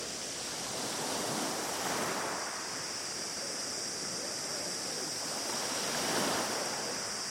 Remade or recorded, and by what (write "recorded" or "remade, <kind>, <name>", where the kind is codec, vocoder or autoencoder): recorded